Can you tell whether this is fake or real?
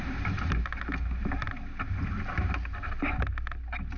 real